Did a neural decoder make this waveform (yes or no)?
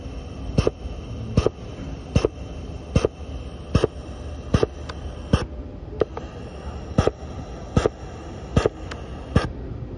no